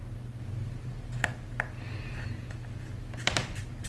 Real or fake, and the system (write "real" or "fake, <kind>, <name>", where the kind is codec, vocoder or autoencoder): fake, vocoder, BigVGAN v2